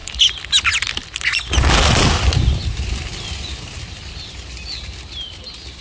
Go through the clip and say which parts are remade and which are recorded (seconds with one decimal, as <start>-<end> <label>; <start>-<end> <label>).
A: 0.0-5.8 recorded